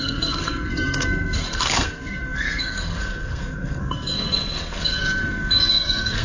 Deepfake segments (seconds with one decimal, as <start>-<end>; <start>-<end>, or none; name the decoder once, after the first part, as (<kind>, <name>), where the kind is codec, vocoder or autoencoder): 0.0-6.2 (codec, SNAC)